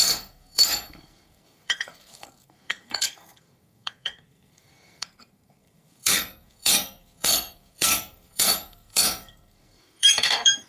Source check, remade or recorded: remade